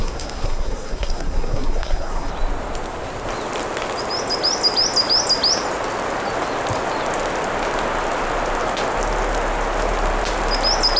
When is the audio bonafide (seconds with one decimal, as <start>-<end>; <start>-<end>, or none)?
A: 2.3-11.0